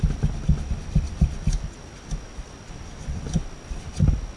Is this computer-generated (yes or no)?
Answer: no